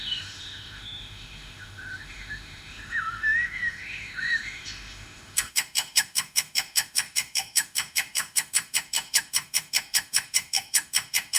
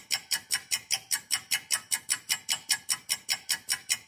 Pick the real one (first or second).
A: second